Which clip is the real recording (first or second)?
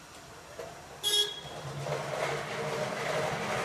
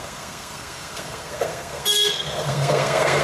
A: first